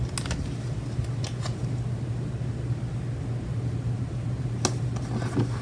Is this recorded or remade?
recorded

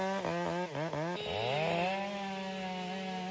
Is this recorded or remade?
recorded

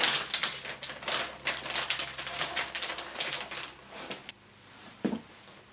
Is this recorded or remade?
recorded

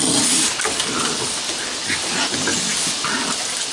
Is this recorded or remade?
recorded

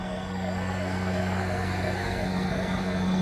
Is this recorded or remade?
remade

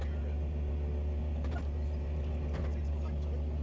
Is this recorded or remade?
recorded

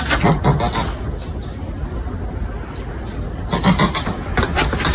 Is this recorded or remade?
recorded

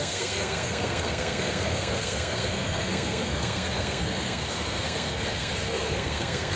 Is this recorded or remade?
remade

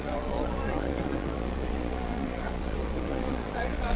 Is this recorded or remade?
remade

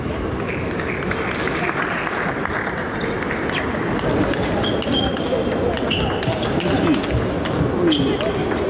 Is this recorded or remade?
recorded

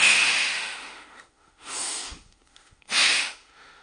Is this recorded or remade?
remade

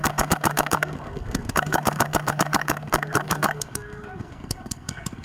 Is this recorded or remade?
remade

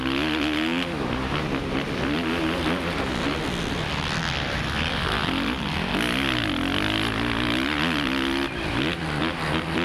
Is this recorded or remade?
recorded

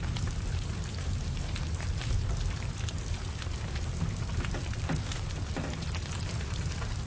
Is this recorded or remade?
recorded